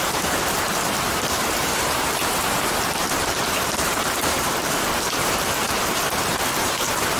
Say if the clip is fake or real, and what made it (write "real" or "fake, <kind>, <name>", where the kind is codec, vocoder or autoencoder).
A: fake, vocoder, BigVGAN v2